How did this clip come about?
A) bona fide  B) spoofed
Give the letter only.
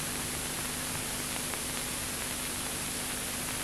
A